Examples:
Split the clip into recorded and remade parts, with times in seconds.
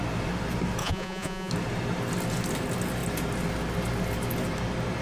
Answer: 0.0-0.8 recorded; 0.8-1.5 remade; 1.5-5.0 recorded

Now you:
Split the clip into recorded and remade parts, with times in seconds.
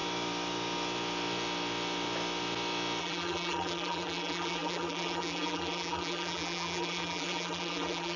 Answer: 0.0-3.0 recorded; 3.0-8.2 remade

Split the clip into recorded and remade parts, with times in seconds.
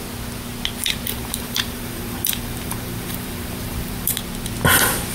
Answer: 0.0-1.1 recorded; 1.1-4.2 remade; 4.2-5.1 recorded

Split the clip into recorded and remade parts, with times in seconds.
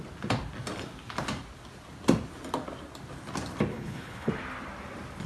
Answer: 0.0-3.7 recorded; 3.7-4.3 remade; 4.3-5.3 recorded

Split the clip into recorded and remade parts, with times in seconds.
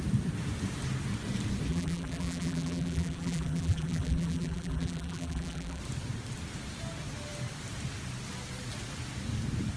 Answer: 0.0-1.7 recorded; 1.7-5.8 remade; 5.8-9.8 recorded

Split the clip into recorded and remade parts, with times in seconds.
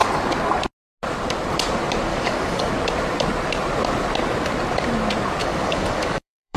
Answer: 0.0-2.1 recorded; 2.1-2.7 remade; 2.7-5.4 recorded; 5.4-6.6 remade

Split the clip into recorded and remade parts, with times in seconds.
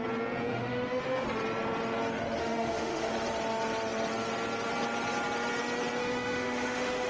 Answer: 0.0-0.5 recorded; 0.5-1.0 remade; 1.0-2.4 recorded; 2.4-3.1 remade; 3.1-6.0 recorded; 6.0-7.1 remade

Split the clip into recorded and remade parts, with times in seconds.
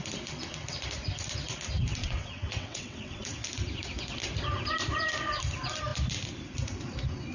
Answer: 0.0-2.0 recorded; 2.0-3.2 remade; 3.2-7.3 recorded